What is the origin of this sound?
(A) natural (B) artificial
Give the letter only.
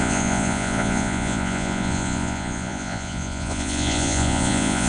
B